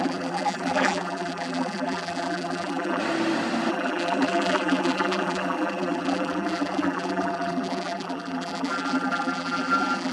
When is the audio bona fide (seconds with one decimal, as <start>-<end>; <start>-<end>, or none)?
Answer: 3.0-3.7